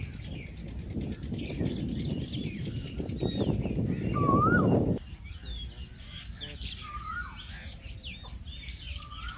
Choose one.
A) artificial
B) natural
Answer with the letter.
B